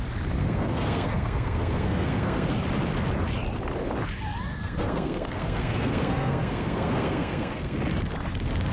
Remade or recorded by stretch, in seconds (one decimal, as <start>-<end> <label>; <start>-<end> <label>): 0.0-0.4 recorded; 0.4-2.5 remade; 2.5-4.5 recorded; 4.5-7.8 remade; 7.8-8.7 recorded